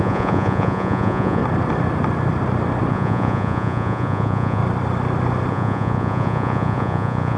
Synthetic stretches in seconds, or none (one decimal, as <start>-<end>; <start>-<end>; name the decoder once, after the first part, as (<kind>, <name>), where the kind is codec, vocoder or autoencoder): 0.0-1.4 (vocoder, Vocos); 2.9-4.6; 5.5-7.4